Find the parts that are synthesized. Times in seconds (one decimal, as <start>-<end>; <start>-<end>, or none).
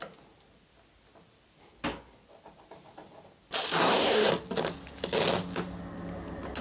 3.8-4.3